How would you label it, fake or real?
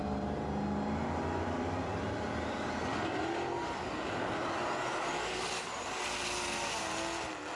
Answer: real